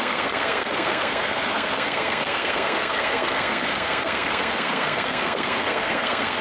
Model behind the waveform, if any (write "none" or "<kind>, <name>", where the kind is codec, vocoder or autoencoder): codec, SNAC